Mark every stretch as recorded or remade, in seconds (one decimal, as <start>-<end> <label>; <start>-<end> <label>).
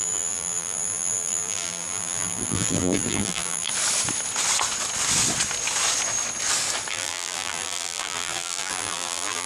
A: 0.0-3.7 remade; 3.7-6.9 recorded; 6.9-9.5 remade